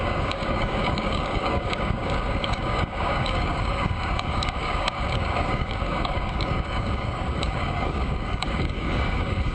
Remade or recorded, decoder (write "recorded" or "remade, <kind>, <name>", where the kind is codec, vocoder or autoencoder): remade, codec, DAC